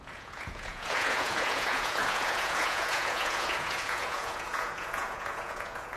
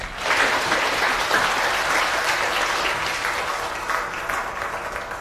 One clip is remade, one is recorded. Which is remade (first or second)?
first